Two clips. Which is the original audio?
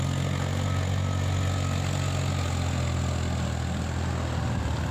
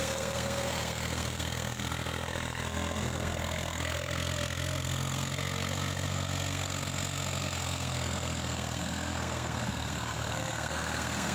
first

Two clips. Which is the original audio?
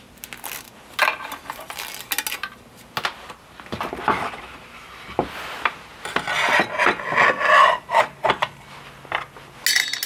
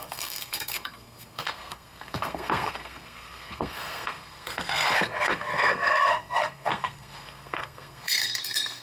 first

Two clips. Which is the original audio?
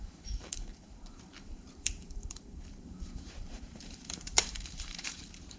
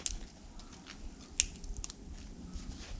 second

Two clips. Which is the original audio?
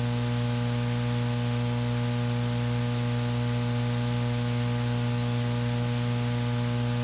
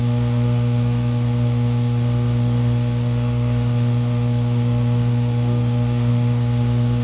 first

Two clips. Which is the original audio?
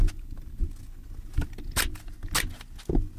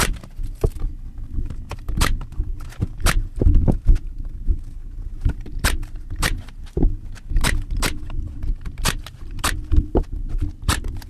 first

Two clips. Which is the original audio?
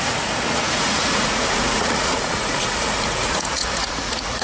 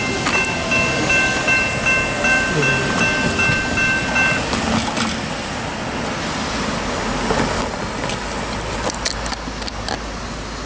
second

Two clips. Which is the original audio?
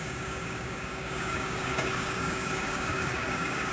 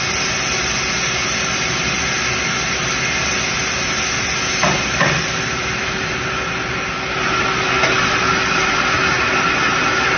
second